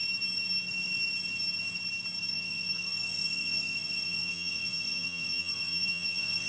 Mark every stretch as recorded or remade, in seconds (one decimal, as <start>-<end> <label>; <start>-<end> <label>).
0.0-2.3 recorded; 2.3-6.5 remade